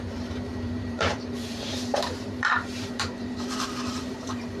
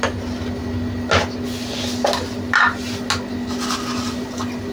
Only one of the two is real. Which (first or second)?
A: second